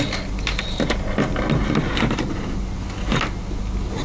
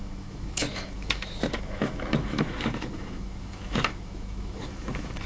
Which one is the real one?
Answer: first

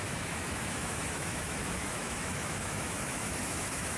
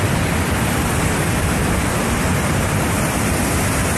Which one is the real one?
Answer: second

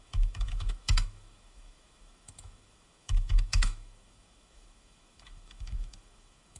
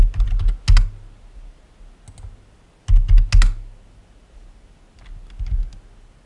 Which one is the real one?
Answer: second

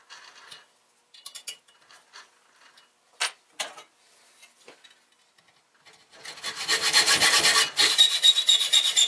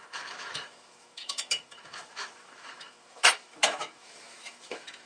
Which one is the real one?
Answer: first